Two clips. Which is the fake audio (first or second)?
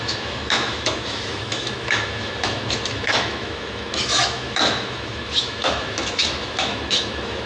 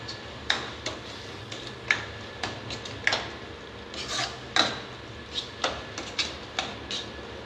first